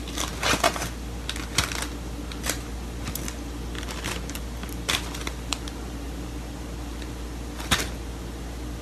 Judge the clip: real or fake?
real